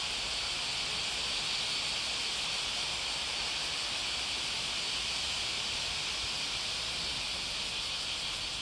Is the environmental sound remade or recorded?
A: recorded